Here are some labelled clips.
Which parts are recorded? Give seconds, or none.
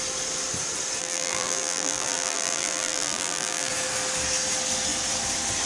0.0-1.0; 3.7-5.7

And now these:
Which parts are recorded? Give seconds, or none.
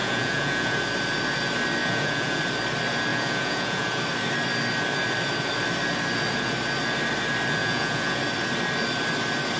0.8-1.8; 2.4-3.1; 4.0-7.6; 8.2-9.6